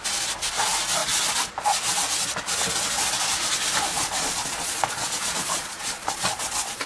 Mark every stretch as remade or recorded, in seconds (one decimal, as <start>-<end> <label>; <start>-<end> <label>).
0.0-3.9 recorded; 3.9-6.9 remade